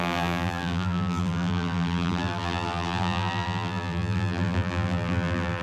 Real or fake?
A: fake